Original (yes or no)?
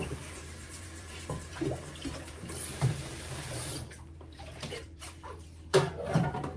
no